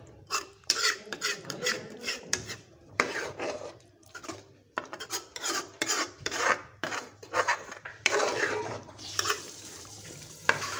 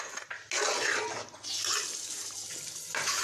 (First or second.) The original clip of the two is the second